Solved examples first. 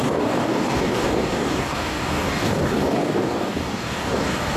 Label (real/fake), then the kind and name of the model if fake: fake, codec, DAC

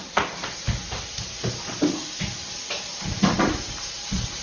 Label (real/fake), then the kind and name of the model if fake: real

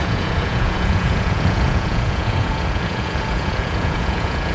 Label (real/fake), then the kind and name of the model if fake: fake, vocoder, Vocos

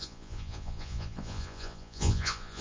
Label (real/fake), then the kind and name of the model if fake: fake, vocoder, Vocos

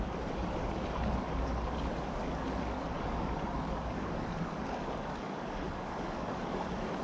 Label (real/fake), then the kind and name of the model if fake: fake, codec, DAC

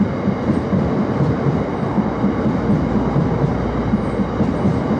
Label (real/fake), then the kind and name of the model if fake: real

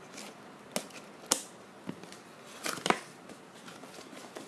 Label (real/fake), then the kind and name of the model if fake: real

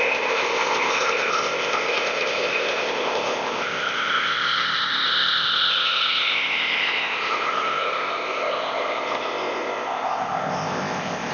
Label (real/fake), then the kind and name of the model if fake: fake, codec, ZipCodec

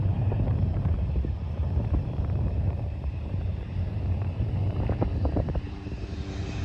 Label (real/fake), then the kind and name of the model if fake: fake, vocoder, BigVGAN v2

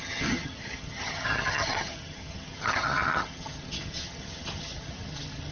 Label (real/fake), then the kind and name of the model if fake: fake, vocoder, HiFi-GAN